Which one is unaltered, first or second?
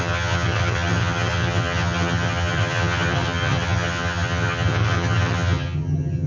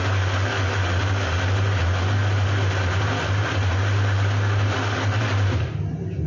second